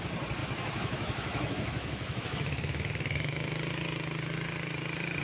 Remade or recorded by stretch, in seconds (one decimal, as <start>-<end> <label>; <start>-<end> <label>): 0.0-0.4 recorded; 0.4-3.5 remade; 3.5-5.2 recorded